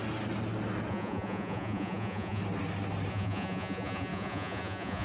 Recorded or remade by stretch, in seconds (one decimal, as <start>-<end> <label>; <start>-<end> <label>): 0.0-0.9 recorded; 0.9-2.4 remade; 2.4-3.1 recorded; 3.1-5.0 remade